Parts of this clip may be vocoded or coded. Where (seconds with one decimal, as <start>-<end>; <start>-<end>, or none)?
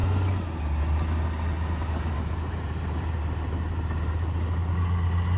1.8-4.4